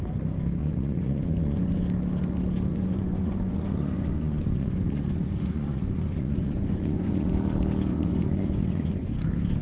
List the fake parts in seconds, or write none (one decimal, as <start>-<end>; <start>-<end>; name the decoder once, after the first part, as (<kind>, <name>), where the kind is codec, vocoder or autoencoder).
0.6-1.8 (vocoder, Vocos); 2.7-7.3; 7.9-9.1